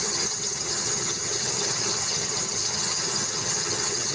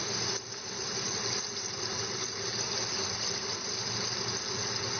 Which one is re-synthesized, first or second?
first